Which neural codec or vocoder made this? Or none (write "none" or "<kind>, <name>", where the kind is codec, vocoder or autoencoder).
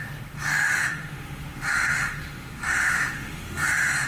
autoencoder, DAC-VAE